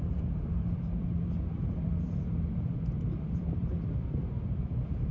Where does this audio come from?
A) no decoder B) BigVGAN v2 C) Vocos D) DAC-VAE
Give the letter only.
B